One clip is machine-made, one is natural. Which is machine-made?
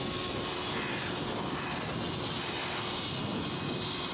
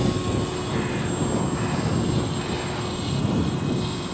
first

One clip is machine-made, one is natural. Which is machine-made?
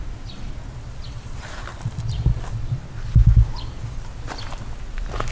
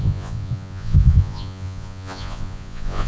second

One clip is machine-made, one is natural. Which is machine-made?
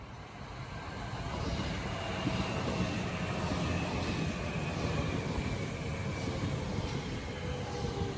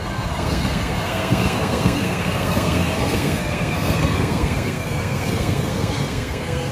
second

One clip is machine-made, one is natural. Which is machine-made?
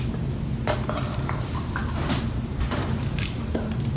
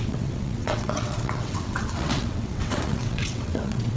second